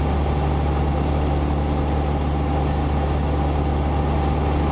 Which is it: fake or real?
real